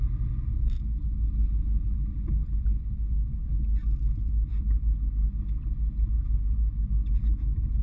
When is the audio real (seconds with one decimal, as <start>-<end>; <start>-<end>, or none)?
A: 0.0-7.8